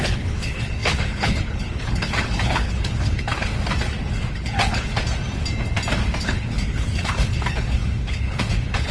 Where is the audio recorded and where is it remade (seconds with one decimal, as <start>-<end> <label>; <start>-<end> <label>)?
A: 0.0-3.5 remade; 3.5-4.3 recorded; 4.3-4.9 remade; 4.9-6.2 recorded; 6.2-8.9 remade